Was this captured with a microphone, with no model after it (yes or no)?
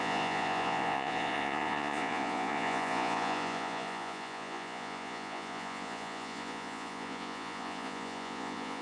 no